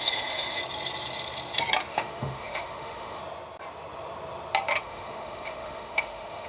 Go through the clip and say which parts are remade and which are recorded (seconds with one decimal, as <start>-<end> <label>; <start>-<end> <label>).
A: 0.0-0.6 remade; 0.6-1.9 recorded; 1.9-3.2 remade; 3.2-4.8 recorded; 4.8-6.5 remade

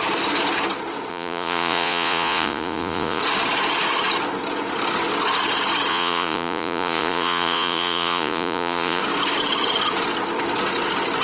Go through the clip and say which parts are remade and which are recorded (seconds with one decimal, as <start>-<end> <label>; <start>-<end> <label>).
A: 0.0-1.1 recorded; 1.1-3.2 remade; 3.2-5.9 recorded; 5.9-9.0 remade; 9.0-11.2 recorded

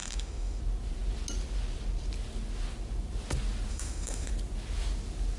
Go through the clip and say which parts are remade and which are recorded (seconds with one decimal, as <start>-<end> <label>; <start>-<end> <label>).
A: 0.0-0.6 remade; 0.6-3.7 recorded; 3.7-4.3 remade; 4.3-5.4 recorded

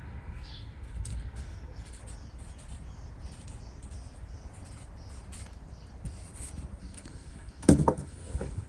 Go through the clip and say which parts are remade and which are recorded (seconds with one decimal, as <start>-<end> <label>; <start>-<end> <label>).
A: 0.0-2.0 remade; 2.0-6.8 recorded; 6.8-8.7 remade